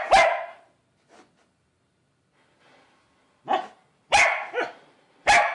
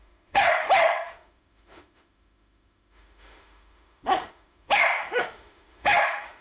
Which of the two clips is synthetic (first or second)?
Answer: second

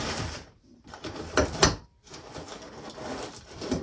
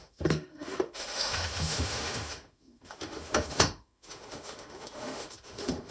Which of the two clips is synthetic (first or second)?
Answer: second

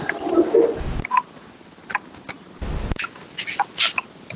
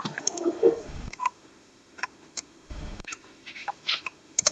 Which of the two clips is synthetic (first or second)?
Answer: second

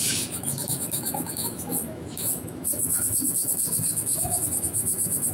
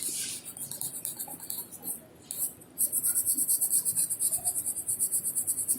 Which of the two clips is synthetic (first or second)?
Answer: first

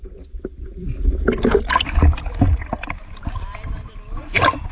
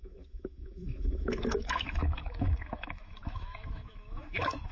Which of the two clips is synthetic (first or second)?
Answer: second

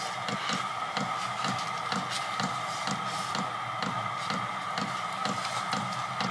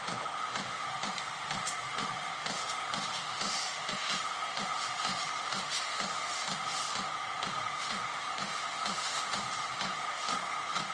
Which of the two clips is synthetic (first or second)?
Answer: second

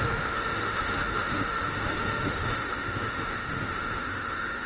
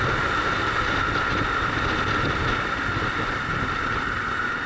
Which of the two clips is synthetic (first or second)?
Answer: first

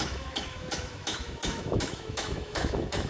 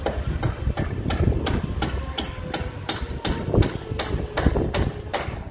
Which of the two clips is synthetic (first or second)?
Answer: first